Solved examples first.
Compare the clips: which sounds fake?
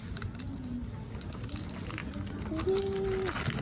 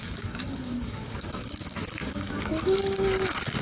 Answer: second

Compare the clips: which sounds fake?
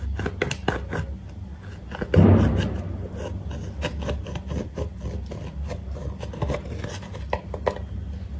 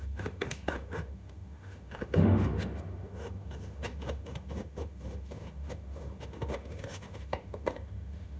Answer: second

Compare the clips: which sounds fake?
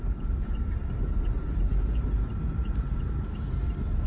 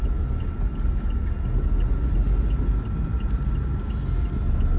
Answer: first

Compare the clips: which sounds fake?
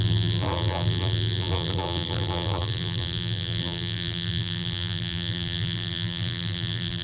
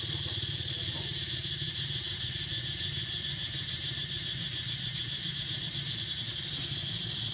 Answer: first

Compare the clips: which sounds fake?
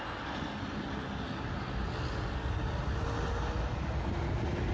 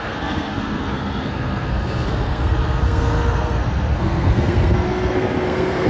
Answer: second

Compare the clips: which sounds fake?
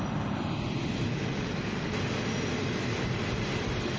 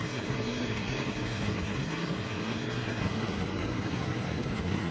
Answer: second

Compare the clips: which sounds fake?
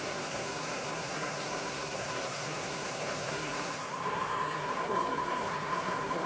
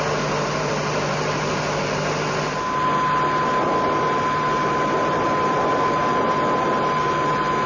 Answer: first